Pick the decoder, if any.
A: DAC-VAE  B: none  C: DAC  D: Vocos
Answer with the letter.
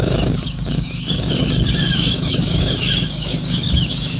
C